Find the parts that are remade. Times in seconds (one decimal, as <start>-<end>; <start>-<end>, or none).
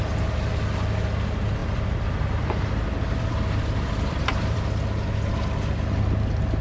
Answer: 1.6-4.6